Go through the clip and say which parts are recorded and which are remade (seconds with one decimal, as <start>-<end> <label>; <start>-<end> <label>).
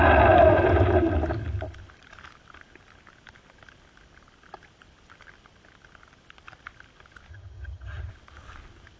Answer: 0.0-7.3 recorded; 7.3-8.1 remade; 8.1-9.0 recorded